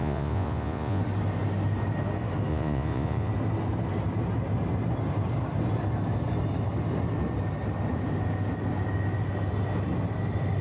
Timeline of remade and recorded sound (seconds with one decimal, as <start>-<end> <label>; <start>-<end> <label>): 0.0-1.0 remade; 1.0-2.5 recorded; 2.5-3.3 remade; 3.3-10.6 recorded